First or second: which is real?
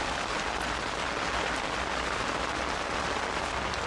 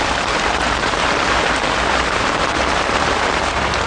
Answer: first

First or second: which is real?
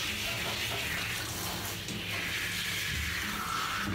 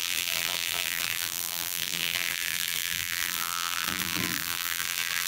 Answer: first